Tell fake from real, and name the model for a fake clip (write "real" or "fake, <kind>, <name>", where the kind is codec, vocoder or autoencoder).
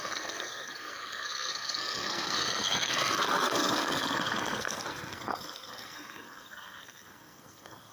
fake, codec, SNAC